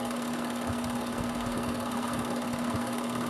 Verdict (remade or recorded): remade